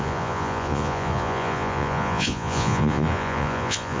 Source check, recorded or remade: remade